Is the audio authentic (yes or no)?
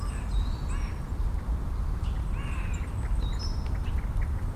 no